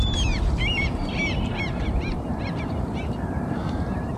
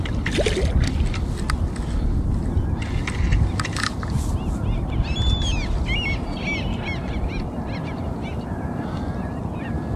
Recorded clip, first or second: second